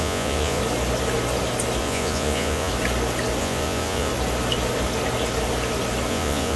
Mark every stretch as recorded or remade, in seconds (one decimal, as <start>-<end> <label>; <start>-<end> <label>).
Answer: 0.0-0.6 remade; 0.6-1.8 recorded; 1.8-2.7 remade; 2.7-3.4 recorded; 3.4-4.1 remade; 4.1-6.1 recorded; 6.1-6.6 remade

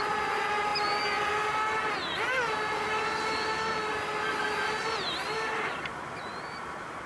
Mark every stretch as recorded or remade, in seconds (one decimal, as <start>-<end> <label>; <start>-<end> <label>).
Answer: 0.0-7.1 recorded

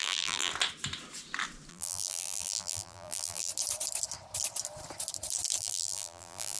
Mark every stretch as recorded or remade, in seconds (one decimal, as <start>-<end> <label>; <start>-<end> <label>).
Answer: 0.0-0.5 remade; 0.5-1.7 recorded; 1.7-3.5 remade; 3.5-5.6 recorded; 5.6-6.6 remade